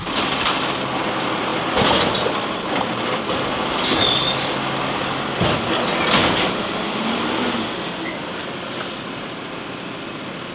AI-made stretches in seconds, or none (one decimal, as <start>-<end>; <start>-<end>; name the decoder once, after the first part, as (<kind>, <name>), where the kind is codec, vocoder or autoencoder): 6.2-7.2 (vocoder, BigVGAN v2)